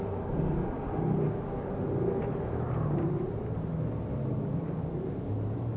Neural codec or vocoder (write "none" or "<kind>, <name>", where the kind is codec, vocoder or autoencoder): none